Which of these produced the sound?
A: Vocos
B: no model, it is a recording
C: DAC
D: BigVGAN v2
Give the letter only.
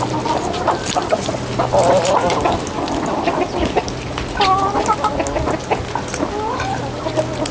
B